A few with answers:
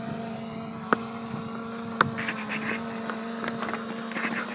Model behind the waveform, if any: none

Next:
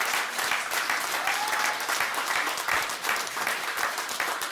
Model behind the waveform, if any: none